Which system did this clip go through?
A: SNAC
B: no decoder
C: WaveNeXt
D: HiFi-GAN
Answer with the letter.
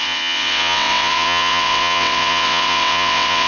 C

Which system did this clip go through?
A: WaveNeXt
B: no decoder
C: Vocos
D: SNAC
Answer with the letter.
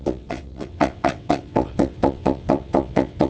A